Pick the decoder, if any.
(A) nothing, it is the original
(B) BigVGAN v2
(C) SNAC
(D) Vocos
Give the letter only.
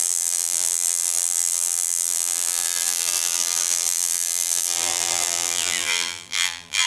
B